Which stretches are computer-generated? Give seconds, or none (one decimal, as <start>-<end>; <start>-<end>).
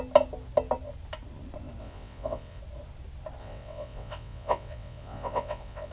1.8-2.6; 3.4-5.9